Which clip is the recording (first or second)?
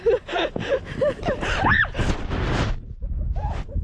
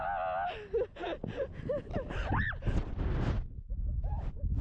second